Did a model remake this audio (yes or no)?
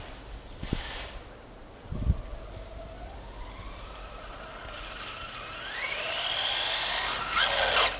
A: no